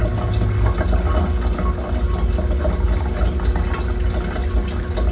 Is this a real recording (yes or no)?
yes